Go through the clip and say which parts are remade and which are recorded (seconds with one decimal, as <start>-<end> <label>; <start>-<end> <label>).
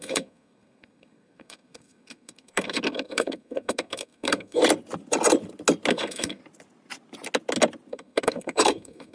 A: 0.0-4.6 remade; 4.6-5.9 recorded; 5.9-6.4 remade; 6.4-7.9 recorded; 7.9-9.1 remade